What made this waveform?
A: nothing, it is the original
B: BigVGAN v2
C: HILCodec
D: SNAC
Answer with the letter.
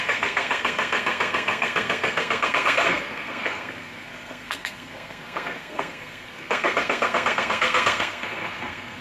D